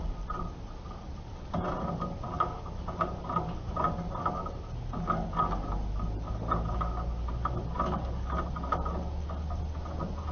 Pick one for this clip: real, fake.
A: real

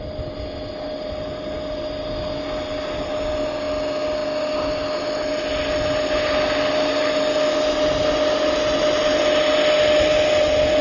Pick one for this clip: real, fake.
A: real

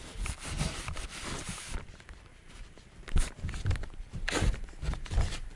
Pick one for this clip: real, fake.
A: fake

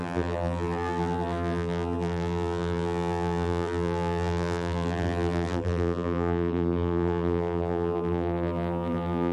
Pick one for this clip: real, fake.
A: fake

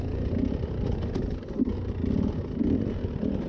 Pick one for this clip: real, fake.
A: fake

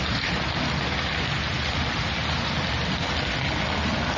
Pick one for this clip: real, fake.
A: real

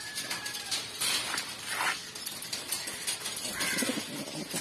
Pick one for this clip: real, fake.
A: real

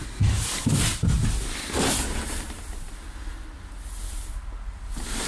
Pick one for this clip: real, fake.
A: real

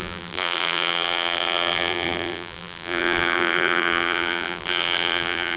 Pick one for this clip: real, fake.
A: fake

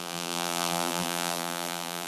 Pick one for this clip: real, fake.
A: fake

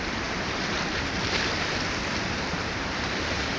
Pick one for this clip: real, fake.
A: fake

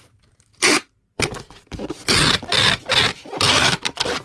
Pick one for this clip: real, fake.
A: real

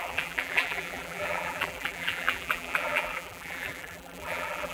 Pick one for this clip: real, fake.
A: fake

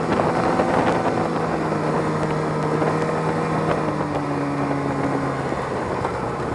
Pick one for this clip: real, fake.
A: real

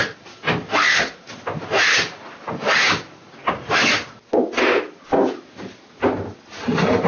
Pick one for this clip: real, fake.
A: real